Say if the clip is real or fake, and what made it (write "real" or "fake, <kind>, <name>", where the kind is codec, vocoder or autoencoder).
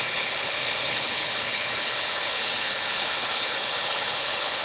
fake, codec, HILCodec